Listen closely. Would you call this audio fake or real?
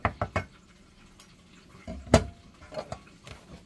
real